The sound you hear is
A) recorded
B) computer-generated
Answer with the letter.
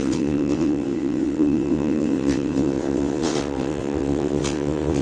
B